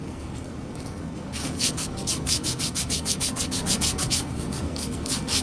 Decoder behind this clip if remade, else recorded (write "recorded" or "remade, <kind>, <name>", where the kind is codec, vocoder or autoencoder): remade, codec, SNAC